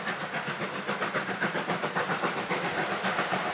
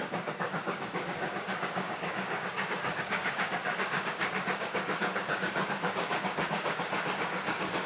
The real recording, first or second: first